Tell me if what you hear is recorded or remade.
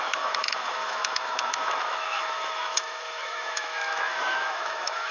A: remade